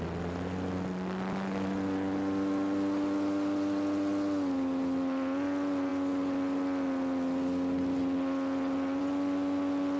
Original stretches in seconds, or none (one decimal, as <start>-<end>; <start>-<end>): 0.0-10.0